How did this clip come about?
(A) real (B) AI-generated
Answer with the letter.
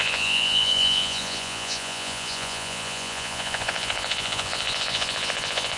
B